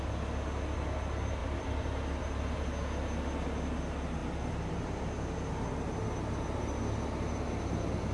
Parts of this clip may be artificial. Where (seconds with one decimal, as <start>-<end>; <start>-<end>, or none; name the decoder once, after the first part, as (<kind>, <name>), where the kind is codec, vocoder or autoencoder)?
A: 1.4-2.2 (vocoder, BigVGAN v2); 4.2-5.0